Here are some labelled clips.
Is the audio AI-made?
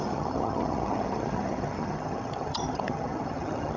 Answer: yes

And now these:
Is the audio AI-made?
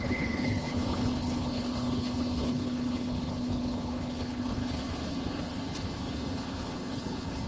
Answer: yes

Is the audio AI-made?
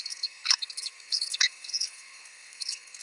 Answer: yes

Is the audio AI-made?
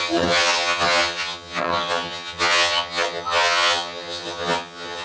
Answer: yes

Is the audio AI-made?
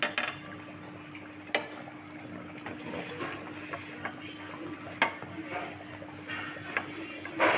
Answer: no